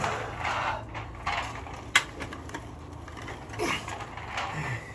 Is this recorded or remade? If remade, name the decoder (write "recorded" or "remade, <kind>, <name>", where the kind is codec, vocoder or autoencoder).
recorded